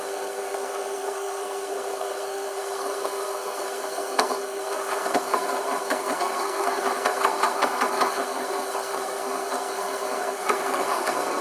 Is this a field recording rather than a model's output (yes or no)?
no